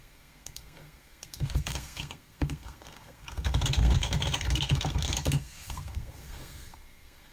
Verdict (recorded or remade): remade